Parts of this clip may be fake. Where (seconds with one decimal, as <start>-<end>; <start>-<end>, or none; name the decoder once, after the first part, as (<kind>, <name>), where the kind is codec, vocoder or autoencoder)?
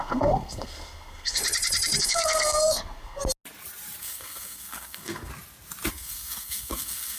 0.0-1.4 (codec, SNAC); 2.0-3.2; 4.0-5.3; 5.9-7.2